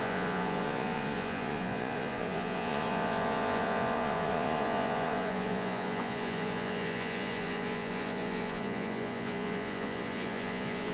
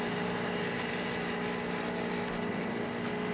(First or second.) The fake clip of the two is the first